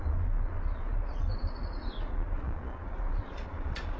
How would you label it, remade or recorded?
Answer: remade